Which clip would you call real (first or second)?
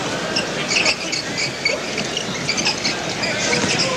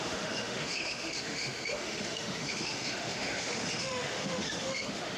first